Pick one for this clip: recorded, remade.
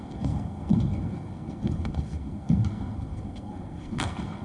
remade